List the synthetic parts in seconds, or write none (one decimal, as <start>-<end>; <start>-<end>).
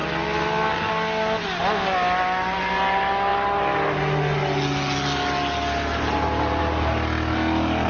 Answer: none